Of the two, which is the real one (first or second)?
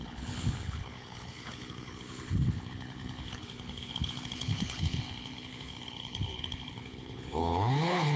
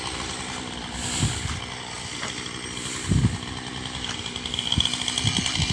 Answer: second